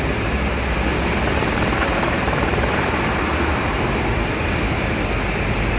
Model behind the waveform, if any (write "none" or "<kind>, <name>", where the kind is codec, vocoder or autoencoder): none